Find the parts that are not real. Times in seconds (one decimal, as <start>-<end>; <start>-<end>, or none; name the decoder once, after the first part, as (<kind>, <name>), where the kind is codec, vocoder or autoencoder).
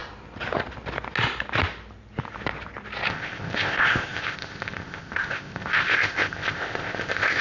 3.1-7.4 (codec, ZipCodec)